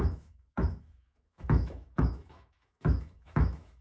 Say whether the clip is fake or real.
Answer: fake